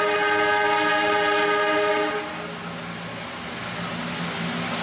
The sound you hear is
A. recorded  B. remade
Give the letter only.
A